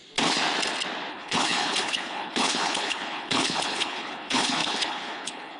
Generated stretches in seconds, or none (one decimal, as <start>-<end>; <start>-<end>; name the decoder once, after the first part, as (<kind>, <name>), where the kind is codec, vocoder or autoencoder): 1.1-5.6 (codec, HILCodec)